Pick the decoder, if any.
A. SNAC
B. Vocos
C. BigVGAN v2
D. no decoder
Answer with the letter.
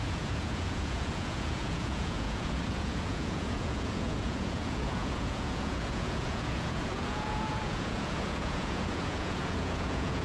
B